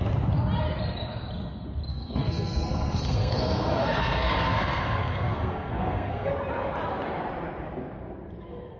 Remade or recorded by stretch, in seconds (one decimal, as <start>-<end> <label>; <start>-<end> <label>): 0.0-1.9 recorded; 1.9-6.3 remade; 6.3-8.8 recorded